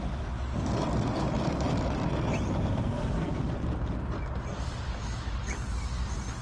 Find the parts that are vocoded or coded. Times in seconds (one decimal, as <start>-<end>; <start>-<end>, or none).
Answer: 2.7-3.4